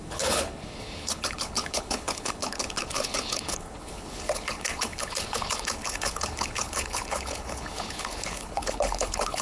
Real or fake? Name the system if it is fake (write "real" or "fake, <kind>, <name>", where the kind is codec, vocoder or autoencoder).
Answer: fake, codec, HILCodec